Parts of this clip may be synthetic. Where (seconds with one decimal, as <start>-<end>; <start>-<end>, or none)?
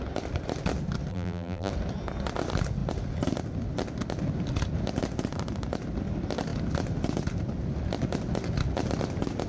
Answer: 1.1-1.7